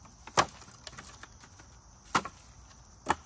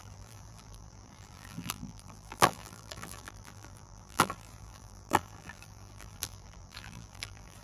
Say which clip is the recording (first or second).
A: first